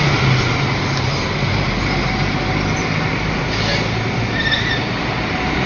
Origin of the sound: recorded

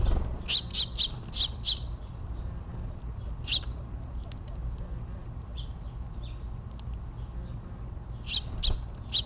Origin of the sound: recorded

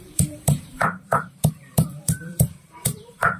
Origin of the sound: remade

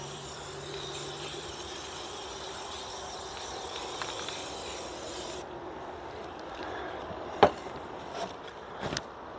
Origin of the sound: remade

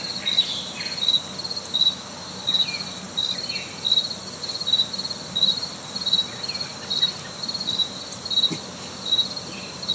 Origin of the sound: recorded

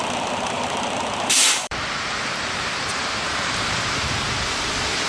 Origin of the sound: remade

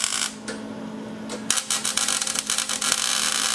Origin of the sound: recorded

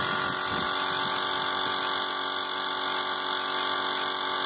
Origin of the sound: recorded